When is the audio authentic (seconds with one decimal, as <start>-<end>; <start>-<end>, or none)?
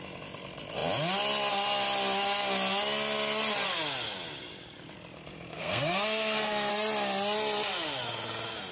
0.0-5.5; 6.7-8.7